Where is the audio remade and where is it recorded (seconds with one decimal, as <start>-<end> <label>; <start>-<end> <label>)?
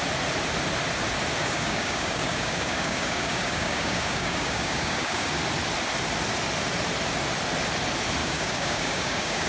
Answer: 0.0-1.4 recorded; 1.4-5.4 remade; 5.4-8.2 recorded; 8.2-9.5 remade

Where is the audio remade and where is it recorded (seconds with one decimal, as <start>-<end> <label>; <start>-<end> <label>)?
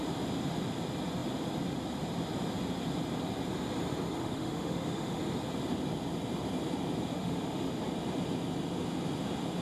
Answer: 0.0-4.2 recorded; 4.2-5.2 remade; 5.2-7.1 recorded; 7.1-7.8 remade; 7.8-9.6 recorded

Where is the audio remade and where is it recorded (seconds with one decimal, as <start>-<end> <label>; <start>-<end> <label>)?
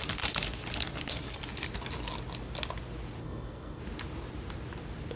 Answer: 0.0-3.2 recorded; 3.2-3.8 remade; 3.8-5.2 recorded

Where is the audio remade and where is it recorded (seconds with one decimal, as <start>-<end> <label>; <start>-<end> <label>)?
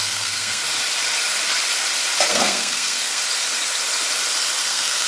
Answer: 0.0-0.6 remade; 0.6-2.3 recorded; 2.3-3.2 remade; 3.2-4.6 recorded; 4.6-5.1 remade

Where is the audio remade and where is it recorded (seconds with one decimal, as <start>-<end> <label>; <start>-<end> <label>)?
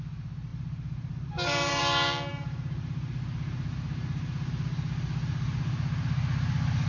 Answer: 0.0-0.5 recorded; 0.5-1.8 remade; 1.8-2.3 recorded; 2.3-4.5 remade; 4.5-6.9 recorded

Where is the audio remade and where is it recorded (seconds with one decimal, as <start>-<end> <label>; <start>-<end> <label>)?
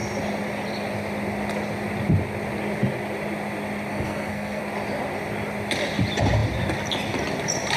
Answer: 0.0-3.9 recorded; 3.9-4.6 remade; 4.6-7.8 recorded